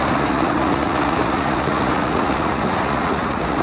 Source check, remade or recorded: remade